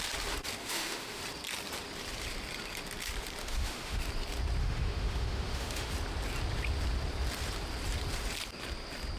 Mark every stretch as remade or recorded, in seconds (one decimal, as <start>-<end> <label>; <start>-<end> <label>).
0.0-0.6 recorded; 0.6-1.2 remade; 1.2-3.4 recorded; 3.4-4.0 remade; 4.0-4.6 recorded; 4.6-5.9 remade; 5.9-9.2 recorded